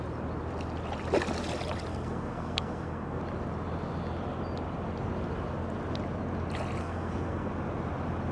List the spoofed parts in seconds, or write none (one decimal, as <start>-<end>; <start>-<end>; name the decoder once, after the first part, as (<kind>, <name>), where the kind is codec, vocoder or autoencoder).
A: 1.9-3.2 (codec, SNAC); 6.8-7.5